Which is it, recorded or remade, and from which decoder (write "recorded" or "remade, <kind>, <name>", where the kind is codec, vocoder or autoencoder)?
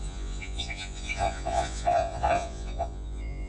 remade, vocoder, Vocos